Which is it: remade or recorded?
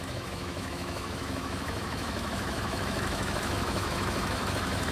remade